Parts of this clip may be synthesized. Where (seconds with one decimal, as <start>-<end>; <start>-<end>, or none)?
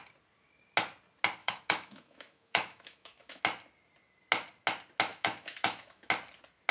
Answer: 1.4-3.4; 5.1-6.1